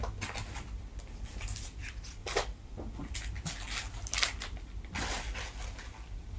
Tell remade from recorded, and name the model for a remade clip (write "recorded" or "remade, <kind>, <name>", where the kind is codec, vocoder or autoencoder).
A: recorded